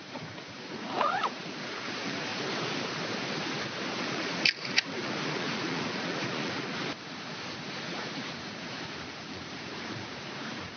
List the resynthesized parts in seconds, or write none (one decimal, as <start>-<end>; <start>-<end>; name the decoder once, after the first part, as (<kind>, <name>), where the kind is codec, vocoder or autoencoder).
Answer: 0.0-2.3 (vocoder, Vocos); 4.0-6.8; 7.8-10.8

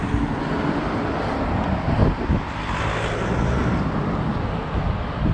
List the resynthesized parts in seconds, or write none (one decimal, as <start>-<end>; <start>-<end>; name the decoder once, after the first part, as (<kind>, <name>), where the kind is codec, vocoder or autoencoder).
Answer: 3.6-4.3 (vocoder, BigVGAN v2)

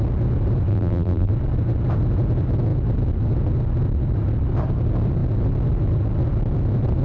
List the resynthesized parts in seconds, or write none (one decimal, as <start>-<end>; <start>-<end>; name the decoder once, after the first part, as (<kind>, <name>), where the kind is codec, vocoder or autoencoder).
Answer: 0.7-1.3 (vocoder, BigVGAN v2)

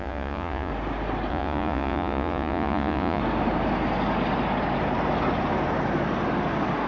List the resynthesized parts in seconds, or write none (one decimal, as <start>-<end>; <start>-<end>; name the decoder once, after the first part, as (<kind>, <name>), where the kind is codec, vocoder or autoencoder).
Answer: 0.0-0.7 (vocoder, Vocos); 1.3-3.2

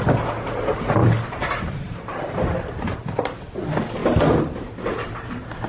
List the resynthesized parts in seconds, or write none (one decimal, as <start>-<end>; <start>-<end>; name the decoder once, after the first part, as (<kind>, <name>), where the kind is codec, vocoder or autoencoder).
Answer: 1.0-3.6 (vocoder, BigVGAN v2); 4.0-5.3

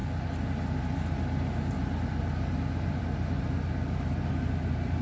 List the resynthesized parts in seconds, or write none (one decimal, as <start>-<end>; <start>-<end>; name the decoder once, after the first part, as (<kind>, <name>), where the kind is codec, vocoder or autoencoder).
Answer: none

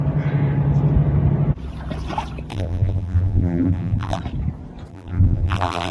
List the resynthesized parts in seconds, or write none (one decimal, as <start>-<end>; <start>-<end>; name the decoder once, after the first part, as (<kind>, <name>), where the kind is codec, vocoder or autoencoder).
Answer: 2.5-4.2 (vocoder, BigVGAN v2); 4.9-5.9